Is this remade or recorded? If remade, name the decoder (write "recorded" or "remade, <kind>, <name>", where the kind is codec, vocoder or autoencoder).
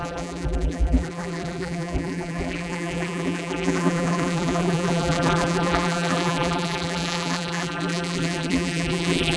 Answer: remade, vocoder, BigVGAN v2